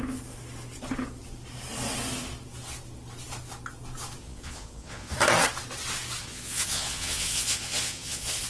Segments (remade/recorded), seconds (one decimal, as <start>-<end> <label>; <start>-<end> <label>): 0.0-4.2 recorded; 4.2-5.1 remade; 5.1-6.2 recorded; 6.2-8.5 remade